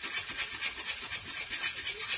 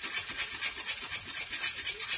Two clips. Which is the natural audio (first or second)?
first